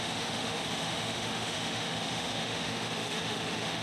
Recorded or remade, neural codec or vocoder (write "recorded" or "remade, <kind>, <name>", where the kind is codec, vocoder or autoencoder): remade, autoencoder, DAC-VAE